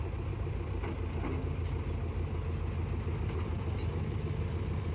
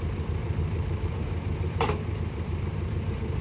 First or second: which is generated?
second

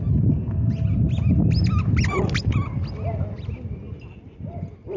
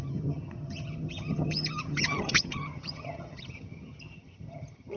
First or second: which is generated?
second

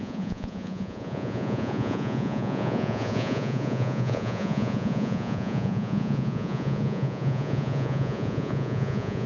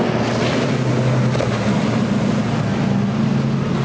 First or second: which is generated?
first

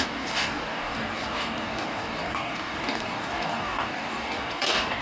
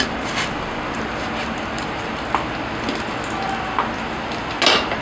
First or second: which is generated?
first